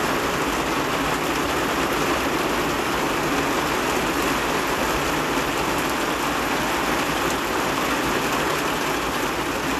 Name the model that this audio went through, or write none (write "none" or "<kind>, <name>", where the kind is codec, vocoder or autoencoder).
none